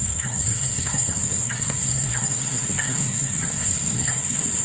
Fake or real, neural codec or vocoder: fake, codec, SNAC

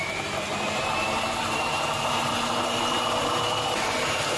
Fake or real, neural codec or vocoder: fake, vocoder, BigVGAN v2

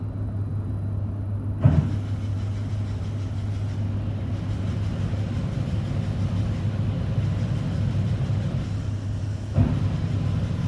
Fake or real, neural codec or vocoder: real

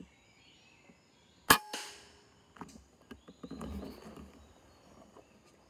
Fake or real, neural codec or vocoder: real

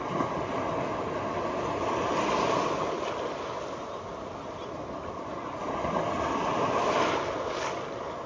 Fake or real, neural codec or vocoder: real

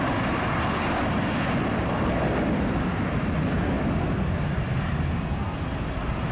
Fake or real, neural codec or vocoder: real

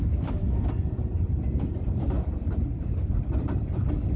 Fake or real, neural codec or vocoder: real